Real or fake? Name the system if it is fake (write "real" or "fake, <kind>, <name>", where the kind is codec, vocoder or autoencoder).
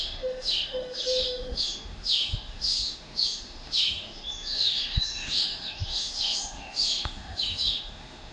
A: fake, autoencoder, DAC-VAE